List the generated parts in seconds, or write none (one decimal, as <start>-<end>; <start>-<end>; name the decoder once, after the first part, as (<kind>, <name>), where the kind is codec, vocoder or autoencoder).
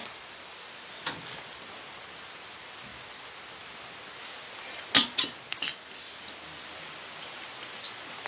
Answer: 0.0-0.9 (vocoder, BigVGAN v2)